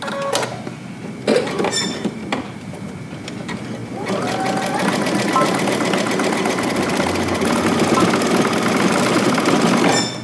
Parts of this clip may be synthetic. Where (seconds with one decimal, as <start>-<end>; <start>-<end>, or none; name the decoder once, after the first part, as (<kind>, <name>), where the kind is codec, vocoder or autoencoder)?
none

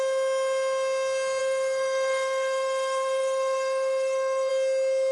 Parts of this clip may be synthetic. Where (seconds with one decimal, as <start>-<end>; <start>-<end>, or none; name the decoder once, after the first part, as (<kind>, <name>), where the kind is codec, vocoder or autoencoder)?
1.4-4.5 (codec, SNAC)

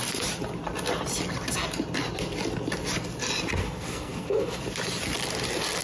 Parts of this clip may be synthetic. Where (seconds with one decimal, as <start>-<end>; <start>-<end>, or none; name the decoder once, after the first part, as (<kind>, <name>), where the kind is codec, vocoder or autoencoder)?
3.6-4.6 (codec, SNAC)